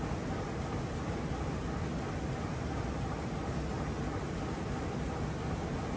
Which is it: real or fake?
real